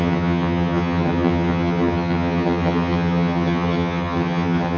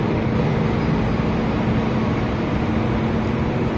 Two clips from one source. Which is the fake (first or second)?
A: first